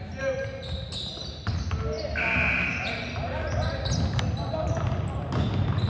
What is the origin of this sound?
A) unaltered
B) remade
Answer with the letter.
A